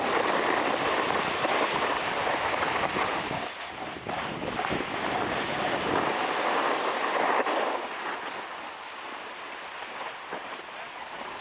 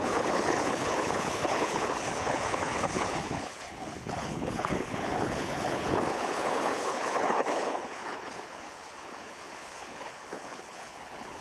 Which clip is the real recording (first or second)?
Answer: first